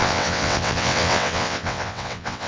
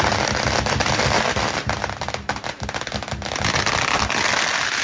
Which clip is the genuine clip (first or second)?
second